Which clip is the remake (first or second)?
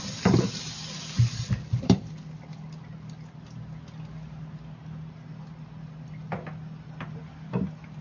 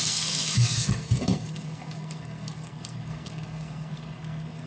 second